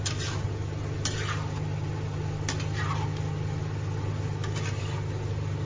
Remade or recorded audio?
recorded